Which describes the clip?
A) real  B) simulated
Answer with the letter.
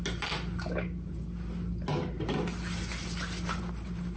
A